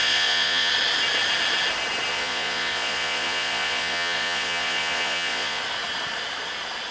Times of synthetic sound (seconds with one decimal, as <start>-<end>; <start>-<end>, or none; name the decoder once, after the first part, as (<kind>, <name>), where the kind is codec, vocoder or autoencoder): 0.0-0.7 (vocoder, Vocos); 2.1-5.6